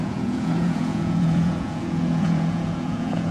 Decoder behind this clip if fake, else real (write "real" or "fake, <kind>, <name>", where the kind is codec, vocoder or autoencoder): fake, vocoder, Vocos